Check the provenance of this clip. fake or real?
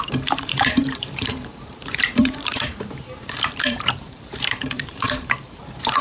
fake